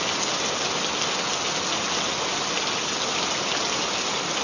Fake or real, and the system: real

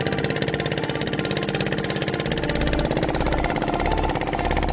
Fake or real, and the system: real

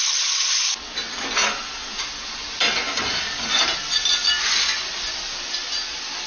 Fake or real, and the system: real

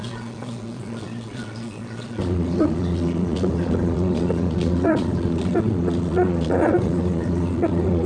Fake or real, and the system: fake, vocoder, Vocos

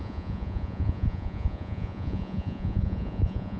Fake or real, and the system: fake, vocoder, Vocos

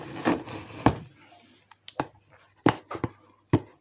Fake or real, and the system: real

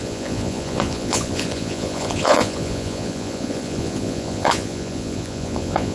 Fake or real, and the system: fake, vocoder, Vocos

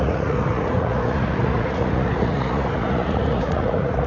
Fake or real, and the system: fake, vocoder, Vocos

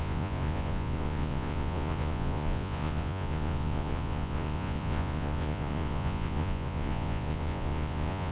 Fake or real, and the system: fake, vocoder, Vocos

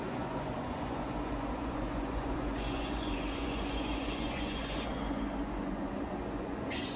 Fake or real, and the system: fake, vocoder, Vocos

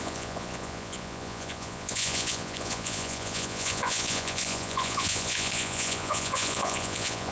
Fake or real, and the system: fake, vocoder, Vocos